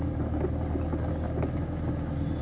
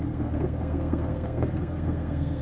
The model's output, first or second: second